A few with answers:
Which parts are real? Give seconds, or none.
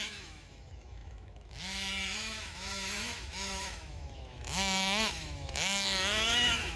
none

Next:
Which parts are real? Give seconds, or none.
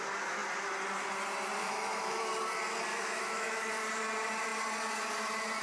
0.0-1.6; 2.3-2.9; 3.7-5.6